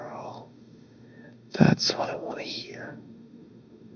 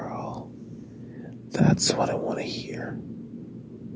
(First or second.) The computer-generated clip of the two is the first